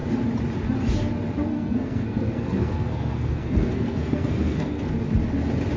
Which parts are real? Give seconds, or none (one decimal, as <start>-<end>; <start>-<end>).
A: 0.0-1.4; 4.9-5.8